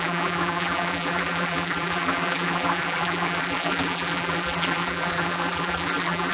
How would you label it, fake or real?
fake